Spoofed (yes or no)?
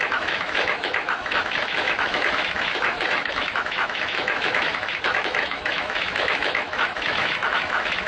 yes